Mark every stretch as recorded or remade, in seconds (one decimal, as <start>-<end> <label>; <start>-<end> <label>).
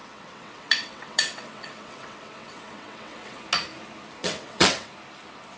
0.0-3.4 remade; 3.4-4.2 recorded; 4.2-4.9 remade; 4.9-5.6 recorded